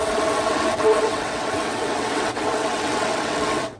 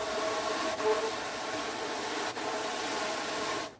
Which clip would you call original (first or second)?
second